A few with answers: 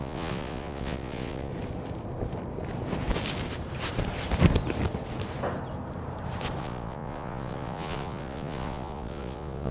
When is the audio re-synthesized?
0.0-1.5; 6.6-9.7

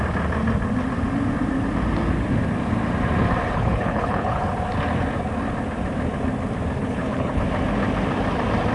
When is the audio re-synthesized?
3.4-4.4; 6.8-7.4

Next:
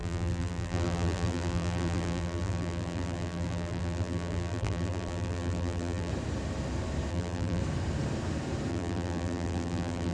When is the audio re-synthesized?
0.0-6.1; 7.1-7.6; 8.7-10.1

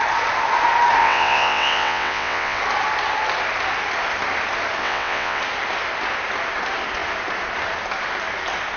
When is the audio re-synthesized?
1.0-2.6; 4.8-5.4